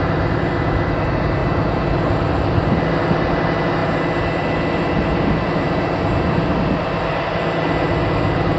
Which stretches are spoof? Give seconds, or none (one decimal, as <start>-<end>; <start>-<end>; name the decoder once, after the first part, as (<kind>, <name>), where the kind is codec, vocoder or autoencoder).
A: none